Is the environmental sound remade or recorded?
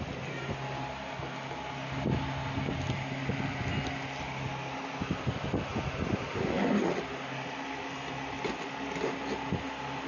recorded